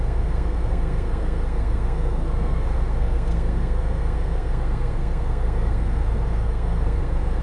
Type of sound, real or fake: fake